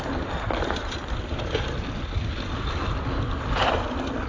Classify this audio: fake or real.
real